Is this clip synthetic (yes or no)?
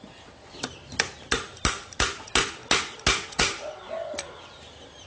no